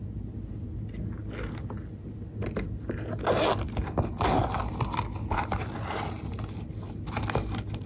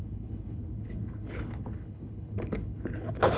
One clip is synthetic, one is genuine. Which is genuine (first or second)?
first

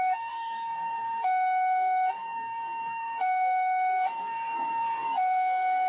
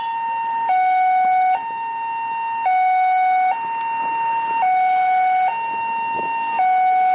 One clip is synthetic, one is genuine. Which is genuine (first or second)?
second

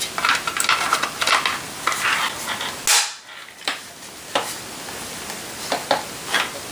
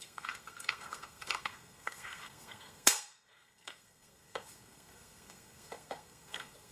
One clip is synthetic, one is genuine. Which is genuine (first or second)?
first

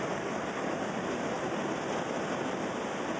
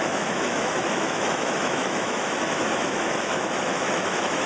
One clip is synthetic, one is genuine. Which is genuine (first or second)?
first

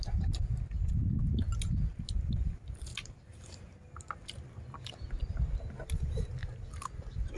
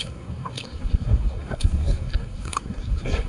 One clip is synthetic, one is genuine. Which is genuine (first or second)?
first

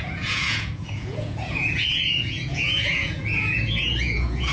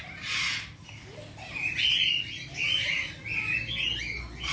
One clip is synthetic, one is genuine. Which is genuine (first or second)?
second